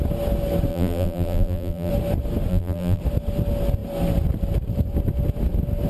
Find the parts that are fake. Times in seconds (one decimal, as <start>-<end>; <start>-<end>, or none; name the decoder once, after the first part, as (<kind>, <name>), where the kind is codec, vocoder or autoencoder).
0.7-1.9 (vocoder, BigVGAN v2); 2.5-3.0